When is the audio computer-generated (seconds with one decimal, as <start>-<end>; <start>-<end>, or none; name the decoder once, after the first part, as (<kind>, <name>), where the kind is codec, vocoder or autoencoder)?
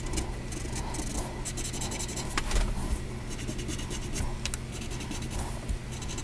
none